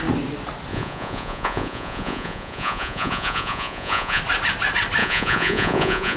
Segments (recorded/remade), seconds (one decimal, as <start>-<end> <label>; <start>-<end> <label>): 0.0-0.7 recorded; 0.7-4.2 remade; 4.2-5.0 recorded; 5.0-6.2 remade